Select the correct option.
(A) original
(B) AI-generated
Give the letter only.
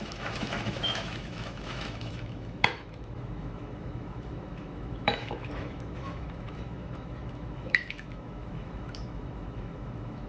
B